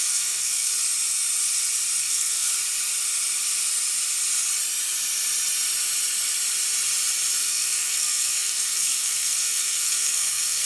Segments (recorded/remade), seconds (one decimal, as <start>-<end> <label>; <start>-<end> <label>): 0.0-0.7 remade; 0.7-2.0 recorded; 2.0-2.5 remade; 2.5-7.4 recorded; 7.4-10.7 remade